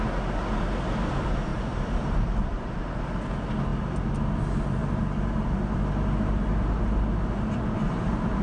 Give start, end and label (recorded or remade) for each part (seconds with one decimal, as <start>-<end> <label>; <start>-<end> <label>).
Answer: 0.0-1.5 recorded; 1.5-2.8 remade; 2.8-8.4 recorded